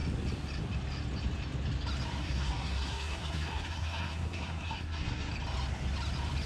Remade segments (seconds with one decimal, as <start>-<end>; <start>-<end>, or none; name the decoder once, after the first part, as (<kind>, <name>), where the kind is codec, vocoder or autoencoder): 2.2-5.3 (codec, SNAC)